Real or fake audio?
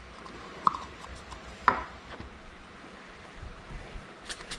fake